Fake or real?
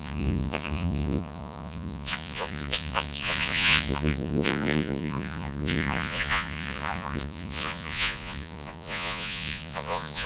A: fake